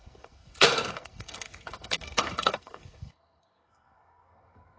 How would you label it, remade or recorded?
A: remade